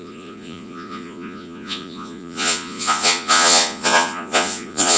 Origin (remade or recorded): remade